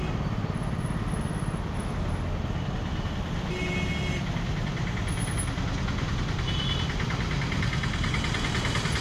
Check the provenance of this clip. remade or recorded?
recorded